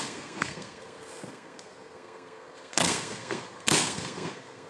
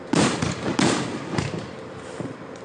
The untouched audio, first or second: second